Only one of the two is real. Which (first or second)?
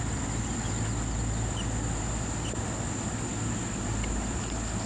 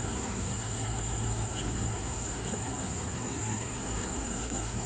first